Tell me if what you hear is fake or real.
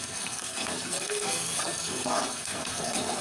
fake